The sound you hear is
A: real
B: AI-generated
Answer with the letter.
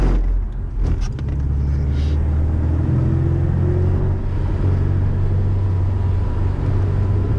A